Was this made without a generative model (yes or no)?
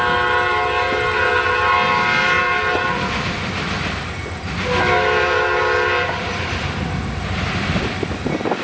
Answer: yes